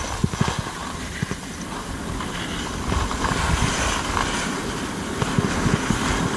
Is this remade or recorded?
recorded